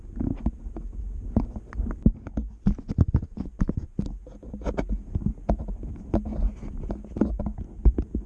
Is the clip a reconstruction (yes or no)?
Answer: no